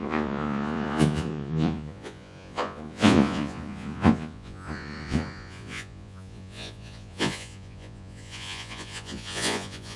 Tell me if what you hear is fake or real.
fake